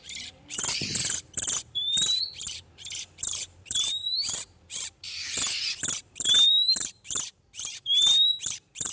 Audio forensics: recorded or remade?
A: remade